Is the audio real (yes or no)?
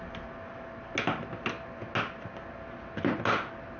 yes